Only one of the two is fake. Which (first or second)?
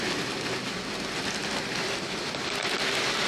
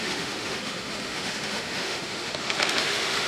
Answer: second